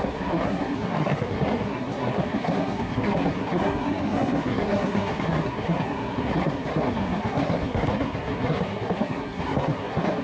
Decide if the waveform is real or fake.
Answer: fake